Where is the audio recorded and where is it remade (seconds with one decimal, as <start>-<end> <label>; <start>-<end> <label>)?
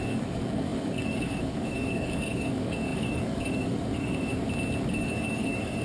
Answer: 0.0-4.3 remade; 4.3-4.9 recorded; 4.9-5.8 remade